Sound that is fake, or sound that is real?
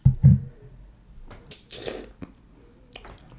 real